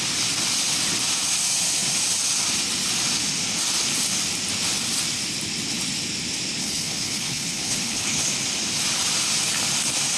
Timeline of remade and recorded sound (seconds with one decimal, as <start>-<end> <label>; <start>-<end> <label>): 0.0-6.6 recorded; 6.6-8.3 remade; 8.3-10.2 recorded